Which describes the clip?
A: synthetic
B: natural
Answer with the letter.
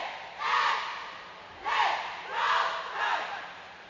B